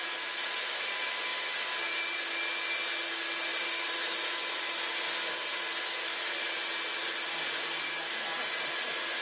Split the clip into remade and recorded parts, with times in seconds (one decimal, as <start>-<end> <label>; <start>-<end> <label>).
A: 0.0-9.2 recorded